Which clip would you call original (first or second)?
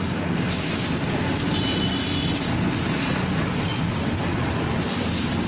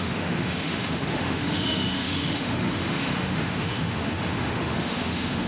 first